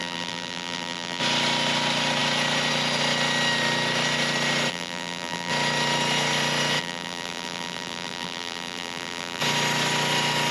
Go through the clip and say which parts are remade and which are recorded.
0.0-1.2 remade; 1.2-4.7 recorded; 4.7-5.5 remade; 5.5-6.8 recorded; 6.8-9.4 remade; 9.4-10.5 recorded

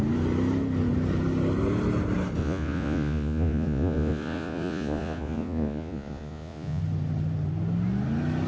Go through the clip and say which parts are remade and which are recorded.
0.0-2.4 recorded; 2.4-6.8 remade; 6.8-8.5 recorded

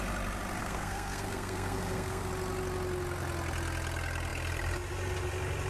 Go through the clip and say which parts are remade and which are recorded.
0.0-0.6 recorded; 0.6-2.3 remade; 2.3-5.7 recorded